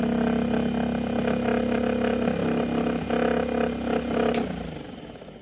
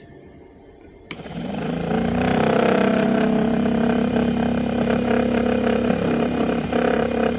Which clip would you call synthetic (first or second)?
second